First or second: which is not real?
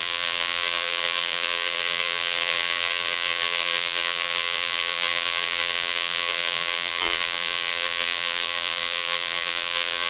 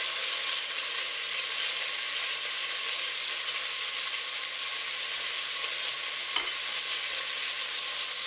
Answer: first